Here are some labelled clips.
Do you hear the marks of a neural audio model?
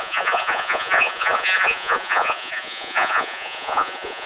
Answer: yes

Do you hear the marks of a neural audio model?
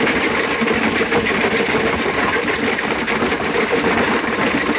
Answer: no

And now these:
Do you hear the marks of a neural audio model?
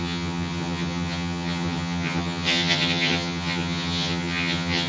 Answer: yes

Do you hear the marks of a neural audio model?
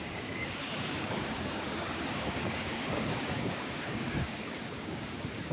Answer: yes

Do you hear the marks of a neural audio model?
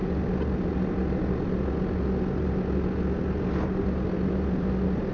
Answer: no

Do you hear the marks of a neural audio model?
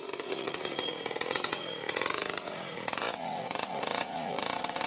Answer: yes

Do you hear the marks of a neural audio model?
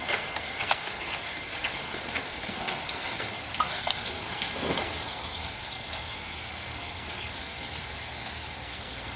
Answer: yes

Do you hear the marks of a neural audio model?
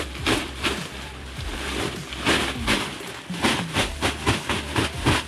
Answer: no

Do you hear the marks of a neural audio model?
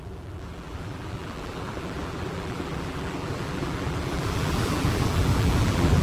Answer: yes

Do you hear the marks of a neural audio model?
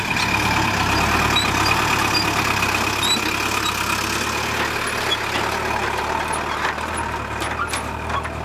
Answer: no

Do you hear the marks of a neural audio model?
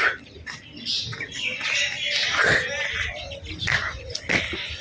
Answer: no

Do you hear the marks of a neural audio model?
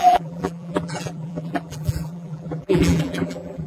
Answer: yes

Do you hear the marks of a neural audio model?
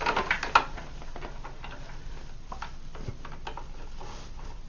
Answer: no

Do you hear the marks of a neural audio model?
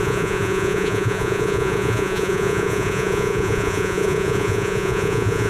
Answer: yes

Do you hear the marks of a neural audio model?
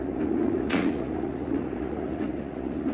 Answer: yes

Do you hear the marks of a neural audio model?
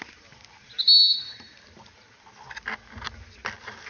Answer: no